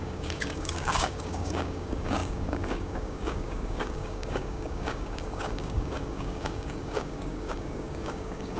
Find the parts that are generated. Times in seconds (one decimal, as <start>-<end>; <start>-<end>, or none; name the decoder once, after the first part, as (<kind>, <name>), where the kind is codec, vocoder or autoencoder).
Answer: 0.0-8.6 (codec, DAC)